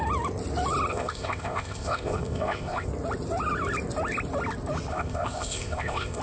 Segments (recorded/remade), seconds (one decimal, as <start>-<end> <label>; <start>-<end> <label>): 0.0-0.9 recorded; 0.9-2.9 remade; 2.9-4.9 recorded; 4.9-6.2 remade